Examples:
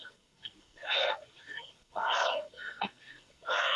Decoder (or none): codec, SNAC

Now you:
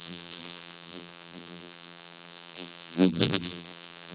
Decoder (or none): vocoder, BigVGAN v2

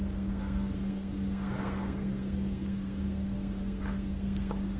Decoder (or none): codec, SNAC